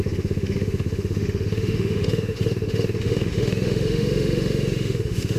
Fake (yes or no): yes